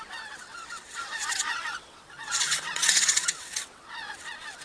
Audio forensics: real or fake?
fake